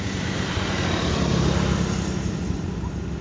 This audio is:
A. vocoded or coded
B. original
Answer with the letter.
A